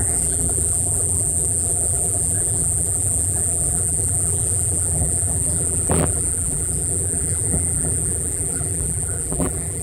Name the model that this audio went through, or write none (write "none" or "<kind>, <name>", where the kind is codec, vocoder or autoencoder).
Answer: vocoder, BigVGAN v2